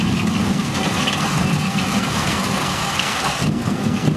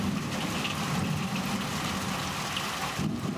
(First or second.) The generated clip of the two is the first